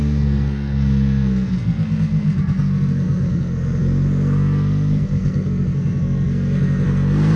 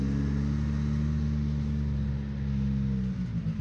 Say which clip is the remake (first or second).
first